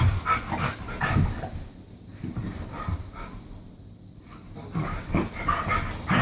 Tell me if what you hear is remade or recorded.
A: remade